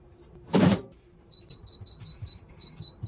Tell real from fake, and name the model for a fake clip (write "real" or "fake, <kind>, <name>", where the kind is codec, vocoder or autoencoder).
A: fake, vocoder, BigVGAN v2